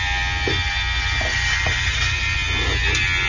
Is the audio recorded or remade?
recorded